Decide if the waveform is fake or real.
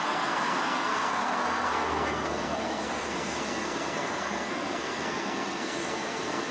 fake